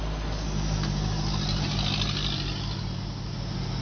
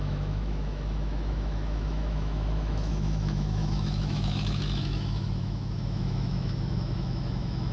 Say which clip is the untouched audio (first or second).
first